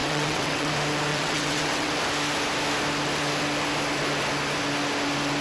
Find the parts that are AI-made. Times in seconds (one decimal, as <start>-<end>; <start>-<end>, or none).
0.0-0.7; 1.1-1.9